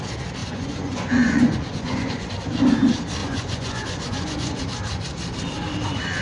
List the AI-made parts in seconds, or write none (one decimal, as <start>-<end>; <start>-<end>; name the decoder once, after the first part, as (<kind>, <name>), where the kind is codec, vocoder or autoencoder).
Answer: 0.4-2.3 (vocoder, Vocos); 3.2-4.6